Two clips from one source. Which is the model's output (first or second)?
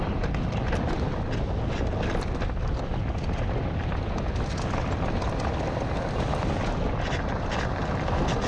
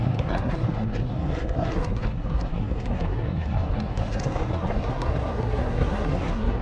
second